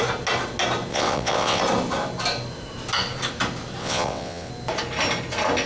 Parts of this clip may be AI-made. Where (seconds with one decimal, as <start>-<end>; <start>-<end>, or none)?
0.9-1.6; 3.8-4.5